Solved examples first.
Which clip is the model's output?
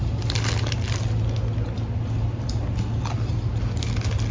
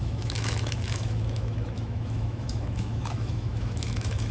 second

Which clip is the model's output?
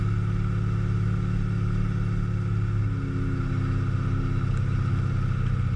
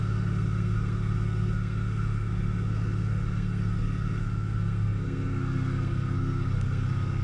second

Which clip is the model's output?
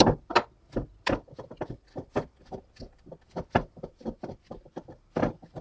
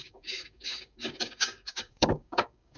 second